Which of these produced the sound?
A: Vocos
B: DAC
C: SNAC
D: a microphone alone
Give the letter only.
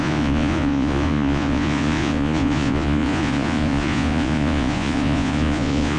A